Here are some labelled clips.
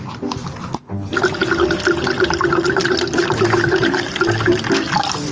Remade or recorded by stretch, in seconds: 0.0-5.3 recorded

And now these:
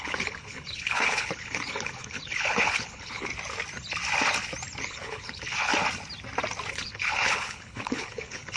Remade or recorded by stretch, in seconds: 0.0-3.3 remade; 3.3-4.8 recorded; 4.8-5.7 remade; 5.7-6.7 recorded; 6.7-8.6 remade

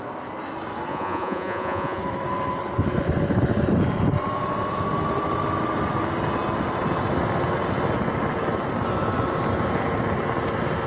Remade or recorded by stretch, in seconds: 0.0-0.9 recorded; 0.9-2.0 remade; 2.0-10.9 recorded

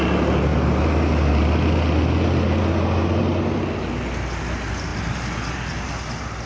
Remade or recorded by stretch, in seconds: 0.0-6.5 recorded

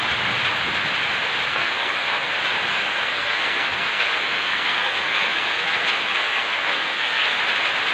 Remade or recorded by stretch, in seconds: 0.0-1.5 recorded; 1.5-2.3 remade; 2.3-2.7 recorded; 2.7-7.4 remade; 7.4-7.9 recorded

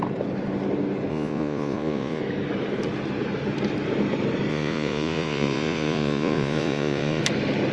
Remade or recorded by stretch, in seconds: 0.0-1.1 recorded; 1.1-2.2 remade; 2.2-4.5 recorded; 4.5-7.2 remade; 7.2-7.7 recorded

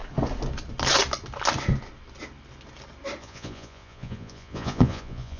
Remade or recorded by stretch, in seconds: 0.0-3.2 recorded; 3.2-5.4 remade

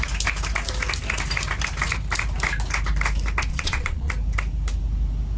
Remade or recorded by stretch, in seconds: 0.0-3.5 recorded; 3.5-4.1 remade; 4.1-5.4 recorded